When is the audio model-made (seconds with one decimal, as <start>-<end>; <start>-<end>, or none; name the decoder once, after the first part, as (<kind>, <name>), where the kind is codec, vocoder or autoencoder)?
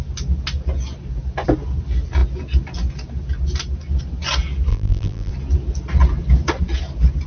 4.7-5.3 (vocoder, BigVGAN v2)